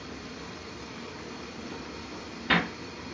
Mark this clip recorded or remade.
recorded